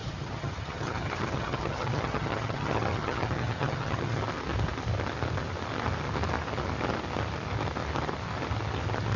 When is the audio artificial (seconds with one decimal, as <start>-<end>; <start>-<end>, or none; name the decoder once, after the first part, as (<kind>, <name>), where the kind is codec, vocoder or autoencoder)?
0.0-4.2 (vocoder, HiFi-GAN)